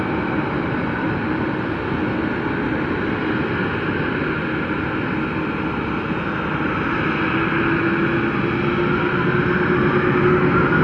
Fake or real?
real